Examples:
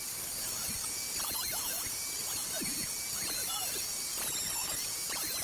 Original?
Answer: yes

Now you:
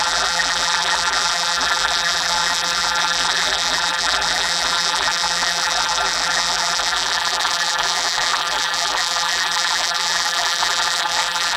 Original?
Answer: no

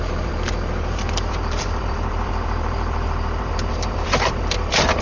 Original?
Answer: no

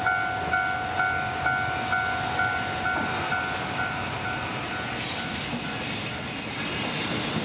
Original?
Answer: yes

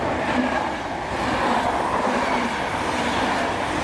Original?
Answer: yes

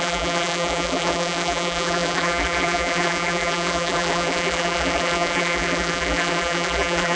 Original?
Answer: no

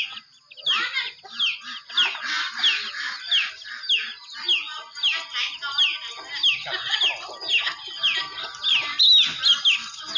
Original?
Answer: yes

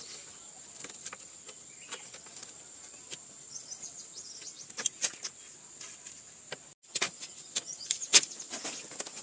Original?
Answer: yes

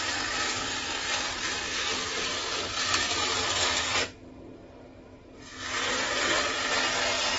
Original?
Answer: yes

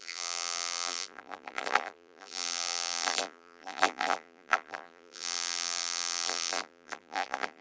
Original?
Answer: no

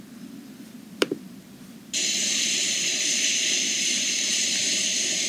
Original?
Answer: no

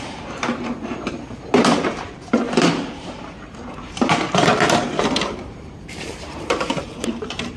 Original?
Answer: no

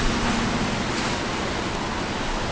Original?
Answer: yes